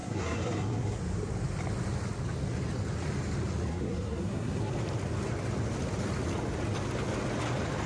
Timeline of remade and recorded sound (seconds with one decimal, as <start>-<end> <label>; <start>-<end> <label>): 0.0-1.0 remade; 1.0-3.7 recorded; 3.7-4.7 remade; 4.7-7.9 recorded